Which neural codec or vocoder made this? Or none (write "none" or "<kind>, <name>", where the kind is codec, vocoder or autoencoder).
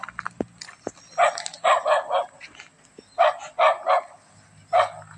none